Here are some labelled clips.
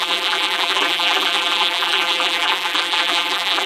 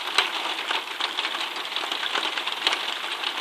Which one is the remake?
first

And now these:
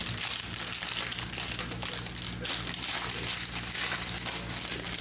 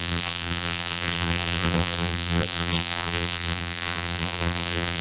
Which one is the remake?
second